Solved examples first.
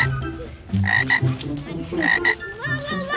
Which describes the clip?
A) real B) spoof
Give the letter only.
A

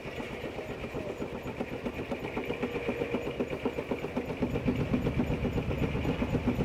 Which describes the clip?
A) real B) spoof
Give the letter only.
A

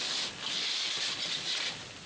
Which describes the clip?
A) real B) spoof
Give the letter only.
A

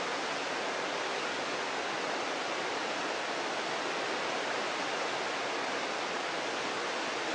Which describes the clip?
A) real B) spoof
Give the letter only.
A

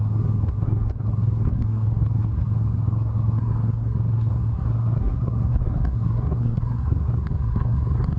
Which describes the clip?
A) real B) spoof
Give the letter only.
B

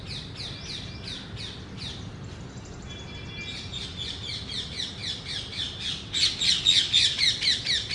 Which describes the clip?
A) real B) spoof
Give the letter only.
A